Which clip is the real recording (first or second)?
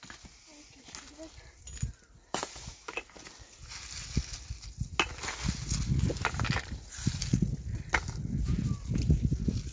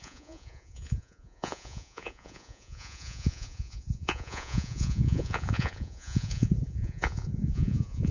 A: first